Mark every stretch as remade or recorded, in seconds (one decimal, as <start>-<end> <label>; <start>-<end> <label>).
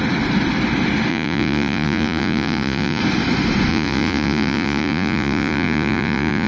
0.0-1.1 recorded; 1.1-3.0 remade; 3.0-3.7 recorded; 3.7-6.5 remade